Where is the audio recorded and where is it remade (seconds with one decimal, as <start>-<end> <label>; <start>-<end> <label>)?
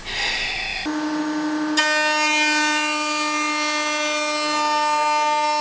0.0-5.6 recorded